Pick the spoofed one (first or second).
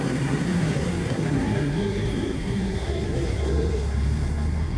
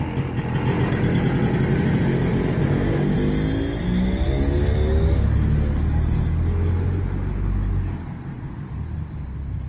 first